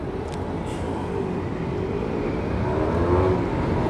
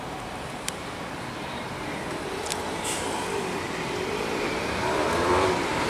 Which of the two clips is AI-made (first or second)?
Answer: second